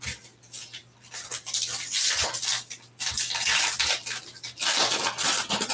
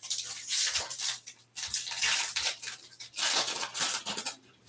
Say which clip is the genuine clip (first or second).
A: first